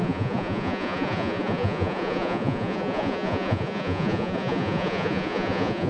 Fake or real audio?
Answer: fake